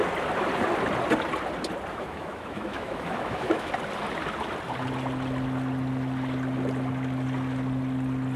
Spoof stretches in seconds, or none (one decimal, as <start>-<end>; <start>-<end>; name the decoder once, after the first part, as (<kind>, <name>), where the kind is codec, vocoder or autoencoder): 1.9-3.7 (autoencoder, DAC-VAE)